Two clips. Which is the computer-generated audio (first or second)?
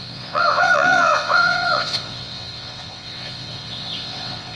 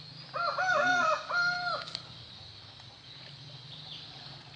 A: first